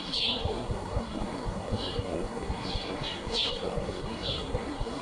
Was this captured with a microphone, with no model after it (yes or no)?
no